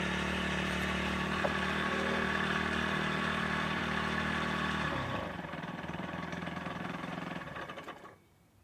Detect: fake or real fake